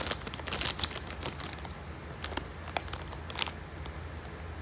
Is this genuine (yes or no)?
yes